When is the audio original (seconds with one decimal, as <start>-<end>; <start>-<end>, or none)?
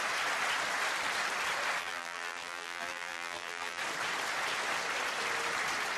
0.0-1.8; 3.8-6.0